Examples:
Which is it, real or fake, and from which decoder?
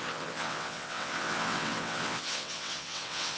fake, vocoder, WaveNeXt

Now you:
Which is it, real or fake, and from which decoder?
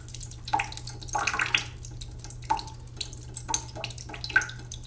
real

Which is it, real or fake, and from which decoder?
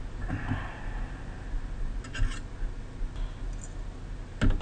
real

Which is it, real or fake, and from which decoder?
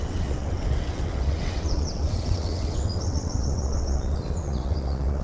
fake, vocoder, WaveNeXt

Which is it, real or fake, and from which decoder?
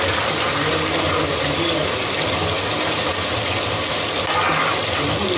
real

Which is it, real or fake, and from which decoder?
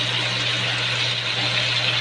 real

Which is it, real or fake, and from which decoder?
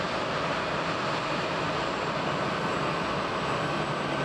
real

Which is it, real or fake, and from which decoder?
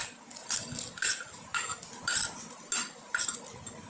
real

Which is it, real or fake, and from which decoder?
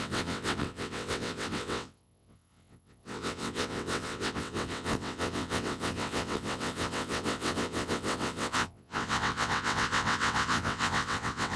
fake, vocoder, WaveNeXt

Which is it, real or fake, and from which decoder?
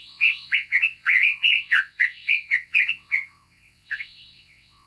fake, vocoder, WaveNeXt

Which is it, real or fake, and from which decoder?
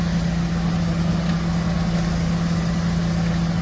real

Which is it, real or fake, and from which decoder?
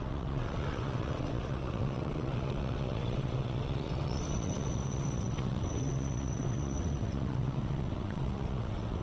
fake, vocoder, WaveNeXt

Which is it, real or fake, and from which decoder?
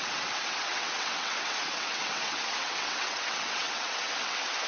fake, vocoder, WaveNeXt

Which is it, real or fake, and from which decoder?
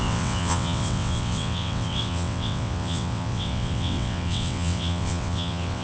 fake, vocoder, WaveNeXt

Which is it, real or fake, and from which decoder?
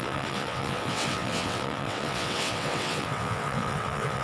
fake, vocoder, WaveNeXt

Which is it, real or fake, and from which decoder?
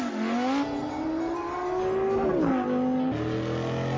real